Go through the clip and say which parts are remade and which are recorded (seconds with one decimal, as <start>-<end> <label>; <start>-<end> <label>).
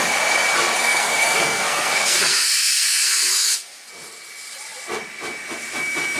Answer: 0.0-0.8 recorded; 0.8-3.9 remade; 3.9-6.2 recorded